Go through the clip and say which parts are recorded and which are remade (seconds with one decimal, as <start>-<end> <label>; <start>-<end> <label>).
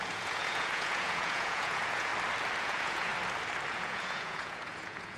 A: 0.0-2.1 remade; 2.1-2.6 recorded; 2.6-3.1 remade; 3.1-3.7 recorded; 3.7-5.2 remade